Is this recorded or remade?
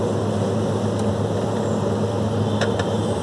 recorded